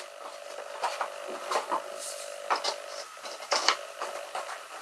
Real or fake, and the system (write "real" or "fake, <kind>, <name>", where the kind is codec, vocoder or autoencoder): real